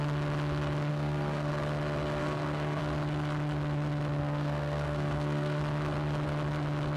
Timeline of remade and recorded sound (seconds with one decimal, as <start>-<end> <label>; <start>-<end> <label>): 0.0-0.9 recorded; 0.9-1.5 remade; 1.5-2.2 recorded; 2.2-2.8 remade; 2.8-4.2 recorded; 4.2-5.6 remade; 5.6-7.0 recorded